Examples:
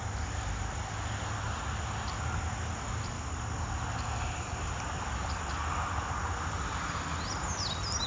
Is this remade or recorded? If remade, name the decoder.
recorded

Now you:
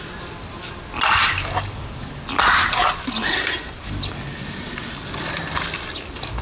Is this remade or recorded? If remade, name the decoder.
recorded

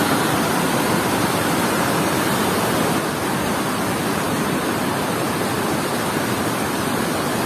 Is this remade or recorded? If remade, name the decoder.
remade, vocoder, BigVGAN v2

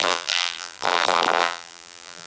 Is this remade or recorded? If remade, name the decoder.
remade, vocoder, BigVGAN v2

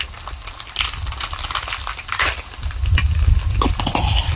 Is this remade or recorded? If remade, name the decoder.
recorded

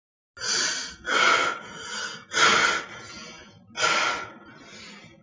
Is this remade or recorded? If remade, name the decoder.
recorded